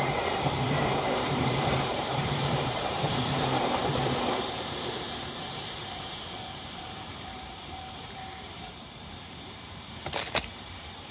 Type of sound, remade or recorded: remade